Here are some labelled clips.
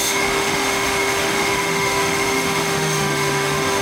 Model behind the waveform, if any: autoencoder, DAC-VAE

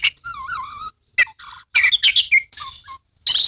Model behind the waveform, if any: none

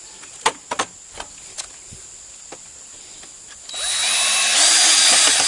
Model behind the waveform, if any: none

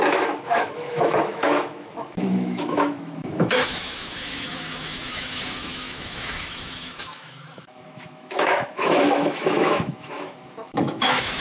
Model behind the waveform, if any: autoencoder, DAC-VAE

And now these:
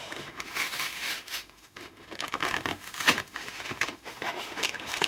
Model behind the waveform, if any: autoencoder, DAC-VAE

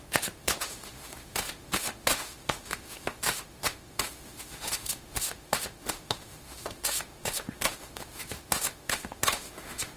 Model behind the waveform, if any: autoencoder, DAC-VAE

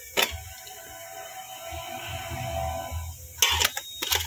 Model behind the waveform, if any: none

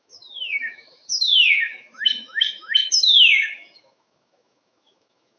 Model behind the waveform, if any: autoencoder, DAC-VAE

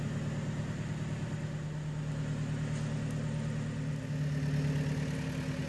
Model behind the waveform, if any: none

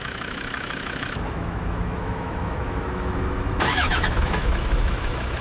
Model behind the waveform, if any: autoencoder, DAC-VAE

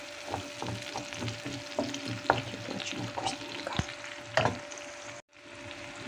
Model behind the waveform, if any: none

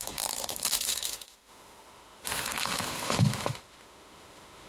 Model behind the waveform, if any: autoencoder, DAC-VAE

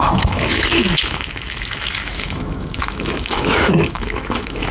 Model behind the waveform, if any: autoencoder, DAC-VAE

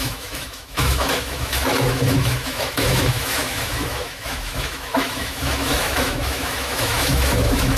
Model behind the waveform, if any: autoencoder, DAC-VAE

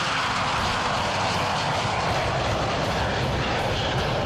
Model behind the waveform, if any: none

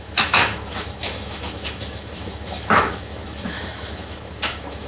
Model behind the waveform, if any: autoencoder, DAC-VAE